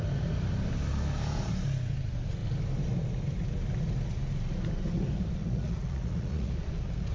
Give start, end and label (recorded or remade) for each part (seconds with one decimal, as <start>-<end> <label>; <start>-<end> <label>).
0.0-5.4 recorded; 5.4-6.5 remade; 6.5-7.1 recorded